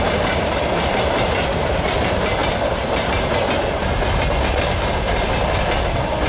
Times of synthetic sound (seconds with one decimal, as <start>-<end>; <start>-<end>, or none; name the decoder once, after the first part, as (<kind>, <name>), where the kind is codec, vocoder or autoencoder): none

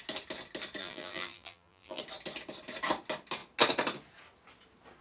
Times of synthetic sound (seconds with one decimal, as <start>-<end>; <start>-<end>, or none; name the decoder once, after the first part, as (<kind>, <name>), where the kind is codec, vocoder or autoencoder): 0.8-2.0 (vocoder, BigVGAN v2)

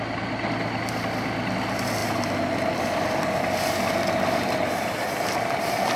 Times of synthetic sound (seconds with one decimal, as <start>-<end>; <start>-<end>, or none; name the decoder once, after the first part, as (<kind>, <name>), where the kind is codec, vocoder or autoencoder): none

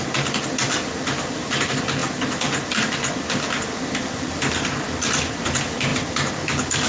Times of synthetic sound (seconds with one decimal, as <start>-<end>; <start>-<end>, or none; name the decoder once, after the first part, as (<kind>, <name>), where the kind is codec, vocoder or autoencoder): none

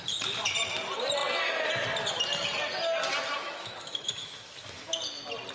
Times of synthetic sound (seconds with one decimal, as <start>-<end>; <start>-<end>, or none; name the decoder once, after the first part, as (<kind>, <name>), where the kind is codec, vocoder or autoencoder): 3.4-4.9 (autoencoder, DAC-VAE)

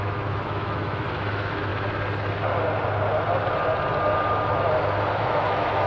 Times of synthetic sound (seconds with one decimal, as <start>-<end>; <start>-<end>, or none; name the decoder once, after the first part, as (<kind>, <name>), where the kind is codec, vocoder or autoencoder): 0.0-1.7 (autoencoder, DAC-VAE); 5.2-5.9

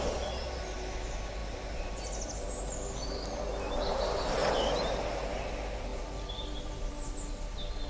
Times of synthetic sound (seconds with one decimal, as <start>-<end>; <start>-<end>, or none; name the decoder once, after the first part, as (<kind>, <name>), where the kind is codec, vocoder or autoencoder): 1.4-4.5 (vocoder, BigVGAN v2); 5.9-7.1

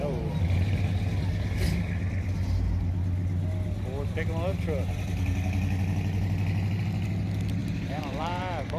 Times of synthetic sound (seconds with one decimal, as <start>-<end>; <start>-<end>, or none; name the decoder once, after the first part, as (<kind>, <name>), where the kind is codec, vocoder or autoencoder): 7.6-8.4 (vocoder, BigVGAN v2)